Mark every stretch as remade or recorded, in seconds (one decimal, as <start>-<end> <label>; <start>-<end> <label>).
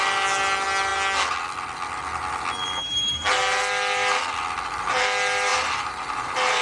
0.0-5.5 recorded; 5.5-6.6 remade